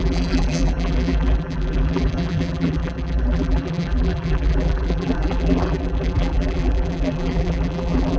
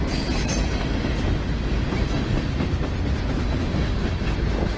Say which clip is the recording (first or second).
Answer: second